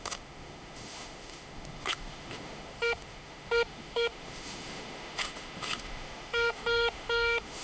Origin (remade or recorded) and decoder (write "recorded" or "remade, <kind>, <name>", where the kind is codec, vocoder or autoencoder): remade, autoencoder, DAC-VAE